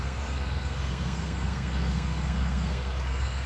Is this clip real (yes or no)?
no